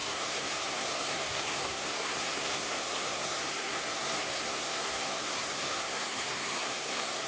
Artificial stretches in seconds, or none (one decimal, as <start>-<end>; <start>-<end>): 0.0-7.3